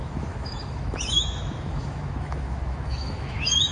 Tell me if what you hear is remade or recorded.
remade